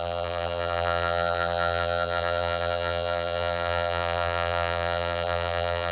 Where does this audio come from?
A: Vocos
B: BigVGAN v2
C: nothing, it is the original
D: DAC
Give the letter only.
B